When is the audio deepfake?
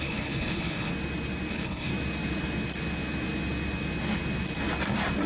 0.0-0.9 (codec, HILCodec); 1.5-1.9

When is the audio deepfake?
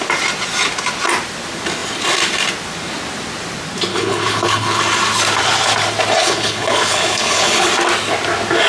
3.9-4.8 (codec, HILCodec); 6.2-7.7